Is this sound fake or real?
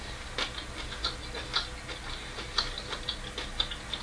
real